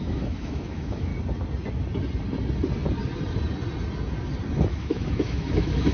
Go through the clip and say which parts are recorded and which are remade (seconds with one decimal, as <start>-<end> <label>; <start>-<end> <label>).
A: 0.0-1.1 remade; 1.1-4.6 recorded; 4.6-5.9 remade